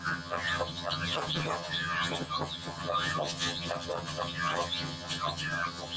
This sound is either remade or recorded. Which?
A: remade